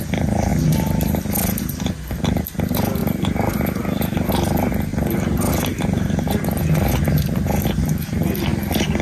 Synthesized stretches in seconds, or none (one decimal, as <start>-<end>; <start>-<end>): 3.0-4.3; 4.9-5.5